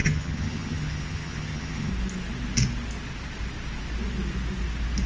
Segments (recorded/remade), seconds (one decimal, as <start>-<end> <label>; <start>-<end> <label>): 0.0-1.9 remade; 1.9-5.1 recorded